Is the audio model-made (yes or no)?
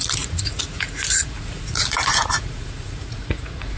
yes